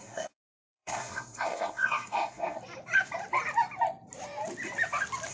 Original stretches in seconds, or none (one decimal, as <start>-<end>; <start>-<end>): 2.6-5.3